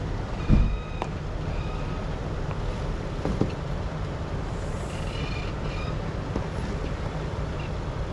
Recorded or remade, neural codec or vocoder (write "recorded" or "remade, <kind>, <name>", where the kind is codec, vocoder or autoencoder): remade, vocoder, BigVGAN v2